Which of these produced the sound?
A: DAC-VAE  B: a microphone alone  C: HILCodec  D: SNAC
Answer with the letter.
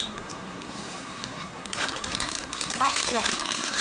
D